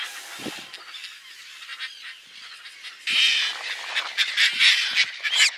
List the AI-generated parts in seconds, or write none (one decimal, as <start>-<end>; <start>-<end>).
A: none